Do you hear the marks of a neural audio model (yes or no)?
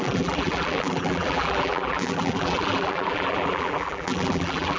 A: yes